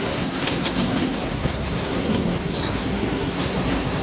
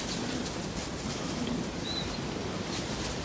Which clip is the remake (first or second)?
first